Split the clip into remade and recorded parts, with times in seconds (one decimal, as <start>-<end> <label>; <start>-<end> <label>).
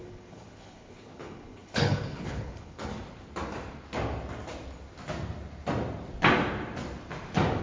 0.0-2.9 remade; 2.9-7.6 recorded